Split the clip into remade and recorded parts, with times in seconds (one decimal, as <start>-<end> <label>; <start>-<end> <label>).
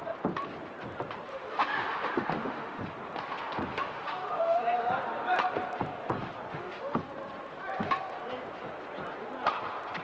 0.0-1.3 recorded; 1.3-2.8 remade; 2.8-3.7 recorded; 3.7-4.6 remade; 4.6-6.5 recorded; 6.5-7.0 remade; 7.0-10.0 recorded